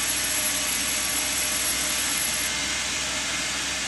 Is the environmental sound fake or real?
real